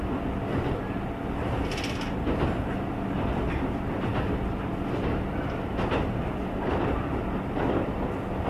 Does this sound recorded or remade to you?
recorded